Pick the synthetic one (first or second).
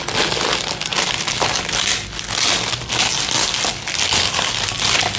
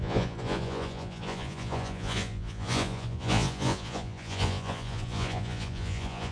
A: second